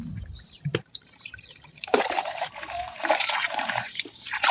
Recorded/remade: remade